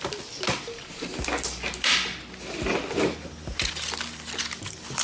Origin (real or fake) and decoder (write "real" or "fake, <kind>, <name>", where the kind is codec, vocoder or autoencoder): real